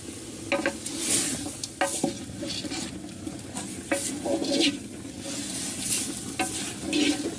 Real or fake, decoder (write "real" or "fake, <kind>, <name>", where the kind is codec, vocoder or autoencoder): real